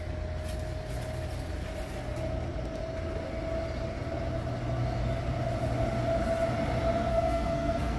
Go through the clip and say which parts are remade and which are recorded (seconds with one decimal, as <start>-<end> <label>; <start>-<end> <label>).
0.0-7.1 recorded; 7.1-8.0 remade